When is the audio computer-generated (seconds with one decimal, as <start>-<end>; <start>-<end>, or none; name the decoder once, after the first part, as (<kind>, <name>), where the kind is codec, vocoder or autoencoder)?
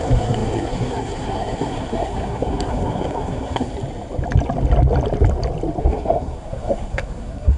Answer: 0.0-3.7 (codec, SNAC); 5.8-7.6